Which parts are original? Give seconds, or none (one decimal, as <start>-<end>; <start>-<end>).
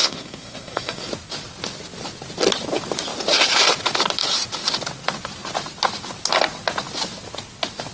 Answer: 1.1-7.9